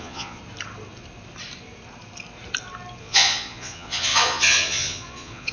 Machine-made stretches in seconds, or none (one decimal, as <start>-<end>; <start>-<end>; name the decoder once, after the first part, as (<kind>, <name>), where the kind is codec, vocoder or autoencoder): 0.0-0.4 (vocoder, Vocos); 3.0-5.5